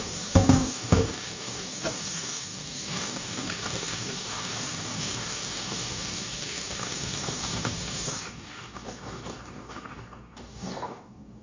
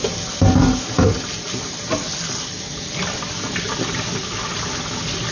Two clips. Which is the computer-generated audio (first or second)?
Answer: first